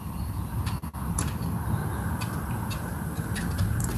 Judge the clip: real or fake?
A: real